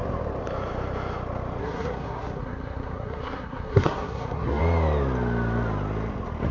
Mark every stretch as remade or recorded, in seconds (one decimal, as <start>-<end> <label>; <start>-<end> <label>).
0.0-1.6 recorded; 1.6-4.6 remade; 4.6-6.5 recorded